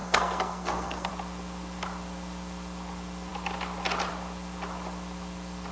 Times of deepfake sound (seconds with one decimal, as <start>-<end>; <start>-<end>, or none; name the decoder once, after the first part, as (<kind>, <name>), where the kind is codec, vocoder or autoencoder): 0.0-1.1 (codec, SNAC)